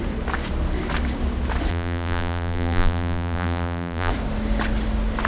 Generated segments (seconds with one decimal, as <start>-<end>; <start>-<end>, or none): 1.7-4.1